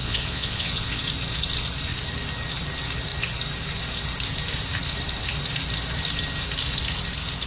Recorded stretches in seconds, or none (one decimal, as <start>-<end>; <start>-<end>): 1.0-7.5